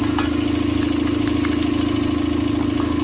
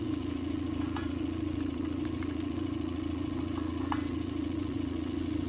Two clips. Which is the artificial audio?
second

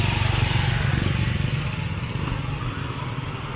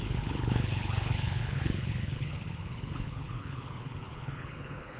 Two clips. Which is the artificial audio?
second